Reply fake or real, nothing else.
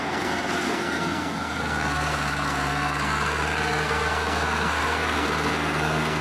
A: fake